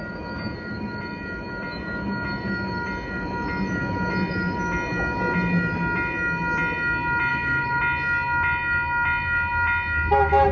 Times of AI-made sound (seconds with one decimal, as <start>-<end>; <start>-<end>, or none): 7.3-7.8